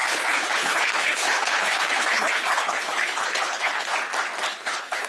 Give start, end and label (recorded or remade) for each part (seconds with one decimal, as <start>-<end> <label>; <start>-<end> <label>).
0.0-3.9 remade; 3.9-4.5 recorded; 4.5-5.1 remade

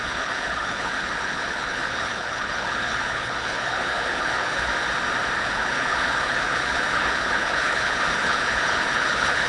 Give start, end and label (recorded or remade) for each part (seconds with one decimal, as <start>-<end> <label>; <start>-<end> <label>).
0.0-4.7 remade; 4.7-5.4 recorded; 5.4-9.5 remade

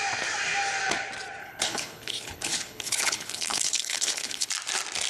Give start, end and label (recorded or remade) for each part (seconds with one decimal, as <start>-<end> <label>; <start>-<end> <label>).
0.0-1.4 recorded; 1.4-4.5 remade; 4.5-5.1 recorded

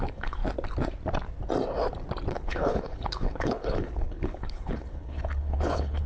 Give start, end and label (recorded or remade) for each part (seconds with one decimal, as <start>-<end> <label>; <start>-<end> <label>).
0.0-0.4 remade; 0.4-2.3 recorded; 2.3-6.1 remade

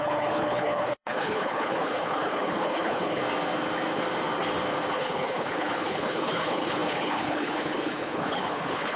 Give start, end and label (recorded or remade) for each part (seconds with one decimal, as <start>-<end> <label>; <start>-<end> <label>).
0.0-3.2 remade; 3.2-4.9 recorded; 4.9-9.0 remade

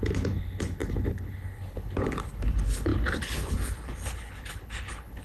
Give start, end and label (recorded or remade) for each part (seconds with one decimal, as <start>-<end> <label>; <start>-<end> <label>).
0.0-5.2 remade

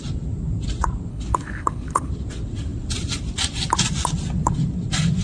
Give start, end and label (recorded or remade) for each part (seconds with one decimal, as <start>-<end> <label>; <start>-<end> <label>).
0.0-1.1 recorded; 1.1-2.1 remade; 2.1-5.2 recorded